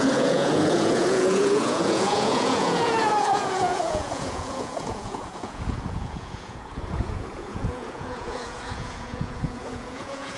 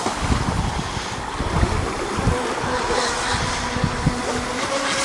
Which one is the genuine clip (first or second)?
second